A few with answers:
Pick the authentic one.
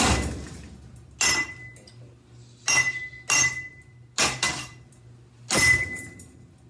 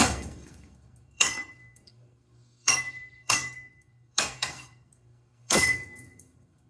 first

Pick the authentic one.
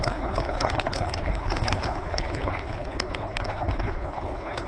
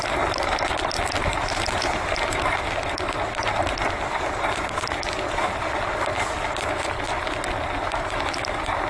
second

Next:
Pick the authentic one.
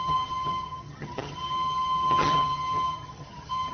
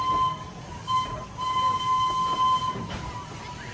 second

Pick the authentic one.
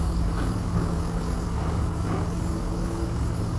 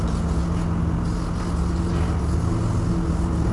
second